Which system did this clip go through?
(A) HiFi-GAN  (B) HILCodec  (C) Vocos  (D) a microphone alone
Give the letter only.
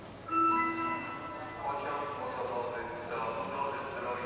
D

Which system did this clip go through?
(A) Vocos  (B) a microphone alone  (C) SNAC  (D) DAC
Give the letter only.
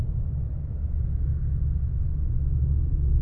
B